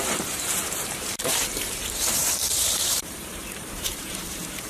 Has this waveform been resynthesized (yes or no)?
yes